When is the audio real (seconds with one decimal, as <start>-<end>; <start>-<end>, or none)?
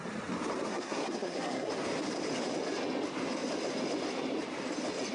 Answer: 0.0-0.7; 1.7-5.1